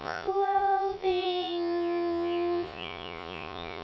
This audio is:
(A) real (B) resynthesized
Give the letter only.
B